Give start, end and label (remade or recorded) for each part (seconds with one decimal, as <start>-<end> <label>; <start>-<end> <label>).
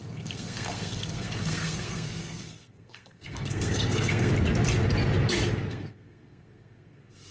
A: 0.0-4.3 remade; 4.3-5.7 recorded; 5.7-7.3 remade